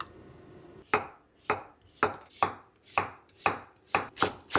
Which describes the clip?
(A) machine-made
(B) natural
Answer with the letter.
B